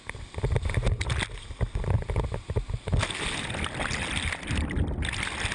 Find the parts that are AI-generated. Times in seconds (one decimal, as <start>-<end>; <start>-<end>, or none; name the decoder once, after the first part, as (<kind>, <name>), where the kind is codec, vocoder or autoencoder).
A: none